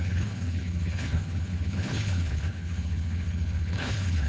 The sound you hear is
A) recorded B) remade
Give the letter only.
B